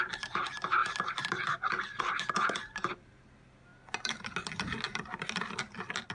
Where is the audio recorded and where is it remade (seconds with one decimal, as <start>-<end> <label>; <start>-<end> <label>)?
0.0-6.1 recorded